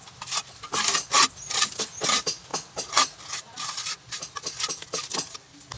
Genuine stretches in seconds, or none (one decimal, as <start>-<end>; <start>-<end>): 0.0-5.8